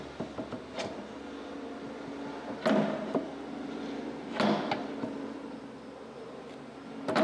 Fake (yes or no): no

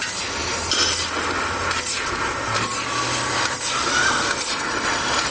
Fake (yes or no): no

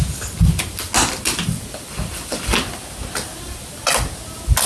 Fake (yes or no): no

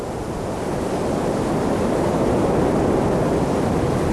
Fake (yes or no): no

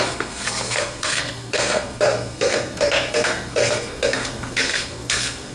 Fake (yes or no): yes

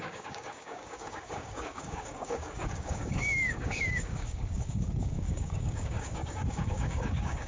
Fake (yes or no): yes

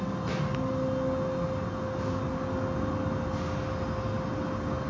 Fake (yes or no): no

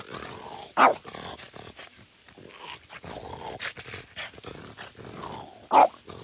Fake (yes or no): no